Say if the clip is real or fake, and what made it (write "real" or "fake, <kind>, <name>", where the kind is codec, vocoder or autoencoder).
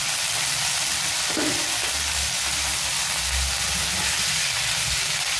real